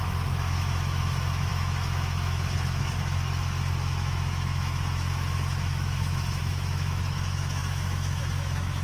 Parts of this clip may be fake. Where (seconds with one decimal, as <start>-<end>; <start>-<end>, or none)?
0.0-8.8